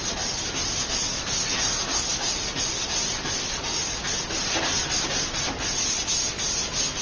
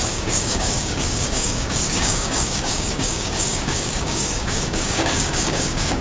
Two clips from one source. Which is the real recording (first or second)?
first